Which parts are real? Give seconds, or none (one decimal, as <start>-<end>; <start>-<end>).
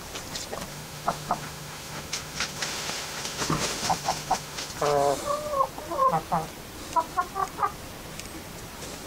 0.0-0.7; 4.7-9.1